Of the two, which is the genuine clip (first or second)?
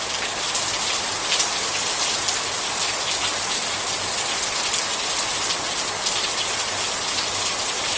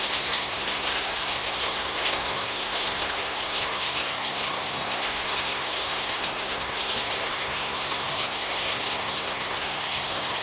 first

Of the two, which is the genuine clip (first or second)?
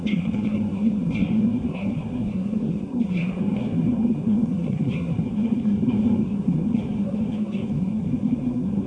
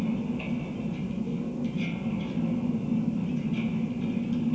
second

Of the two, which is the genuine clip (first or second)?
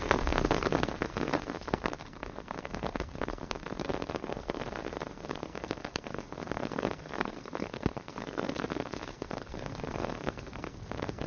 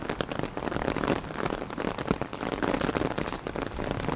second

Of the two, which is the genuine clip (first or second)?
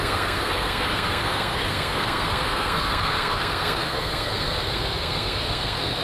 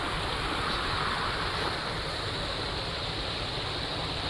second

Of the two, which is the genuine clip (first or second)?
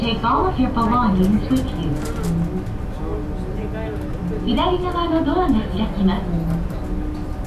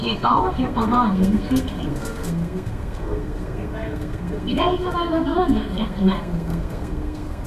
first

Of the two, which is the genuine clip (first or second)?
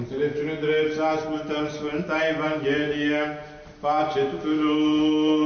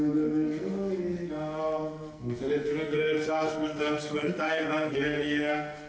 first